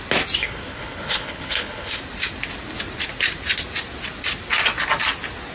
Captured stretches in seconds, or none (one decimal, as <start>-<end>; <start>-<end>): 0.0-0.4; 2.0-5.5